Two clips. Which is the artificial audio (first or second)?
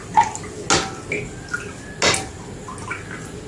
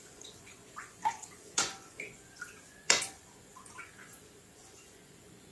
second